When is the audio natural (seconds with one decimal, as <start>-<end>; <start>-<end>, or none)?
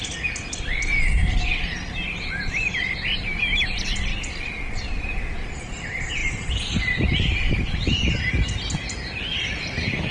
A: 0.9-1.7; 4.1-5.0